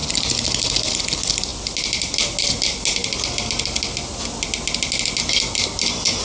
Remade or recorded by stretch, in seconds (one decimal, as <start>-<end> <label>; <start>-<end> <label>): 0.0-6.2 recorded